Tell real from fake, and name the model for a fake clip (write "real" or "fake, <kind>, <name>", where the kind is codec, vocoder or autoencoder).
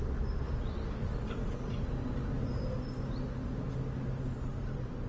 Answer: real